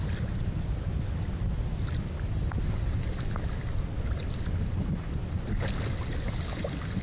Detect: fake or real real